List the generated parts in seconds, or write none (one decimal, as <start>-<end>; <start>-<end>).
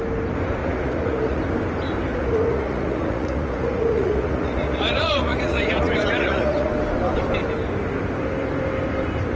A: 0.6-1.4; 2.2-6.7